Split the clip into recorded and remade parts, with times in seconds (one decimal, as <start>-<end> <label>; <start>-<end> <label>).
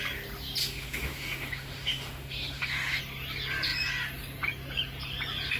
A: 0.0-0.6 recorded; 0.6-3.0 remade; 3.0-5.6 recorded